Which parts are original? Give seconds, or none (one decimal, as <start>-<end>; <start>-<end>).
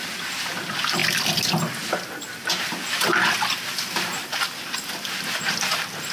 0.0-6.1